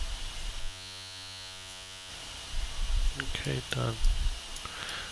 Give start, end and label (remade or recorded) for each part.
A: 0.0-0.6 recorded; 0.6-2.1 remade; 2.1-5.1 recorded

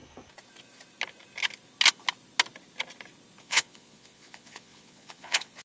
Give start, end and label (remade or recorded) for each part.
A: 0.0-3.4 recorded; 3.4-5.6 remade